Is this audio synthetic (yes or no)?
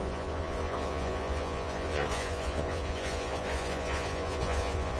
yes